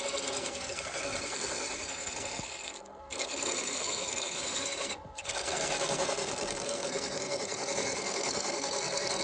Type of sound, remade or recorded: remade